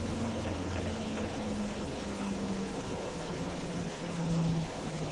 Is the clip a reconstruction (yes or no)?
yes